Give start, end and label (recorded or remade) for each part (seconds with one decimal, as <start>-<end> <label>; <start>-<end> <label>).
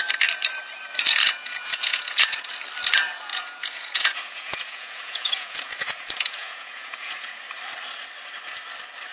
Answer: 0.0-1.2 recorded; 1.2-2.5 remade; 2.5-3.3 recorded; 3.3-7.4 remade; 7.4-9.1 recorded